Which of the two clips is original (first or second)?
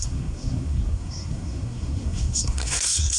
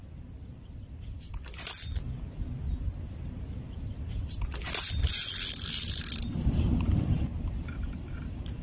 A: second